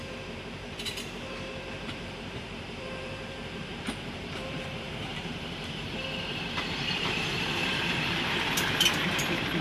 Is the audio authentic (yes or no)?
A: no